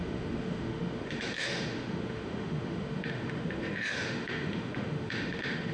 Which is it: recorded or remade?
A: remade